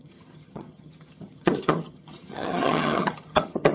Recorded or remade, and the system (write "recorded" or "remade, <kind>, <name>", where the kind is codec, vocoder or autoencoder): remade, vocoder, HiFi-GAN